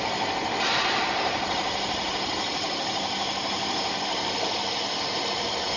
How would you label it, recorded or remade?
remade